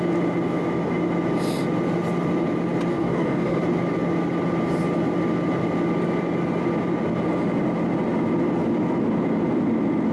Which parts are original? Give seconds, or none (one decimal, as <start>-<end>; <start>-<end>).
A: 0.0-2.9; 3.6-10.1